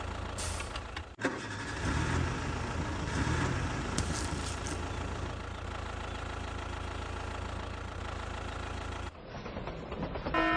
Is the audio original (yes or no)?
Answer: yes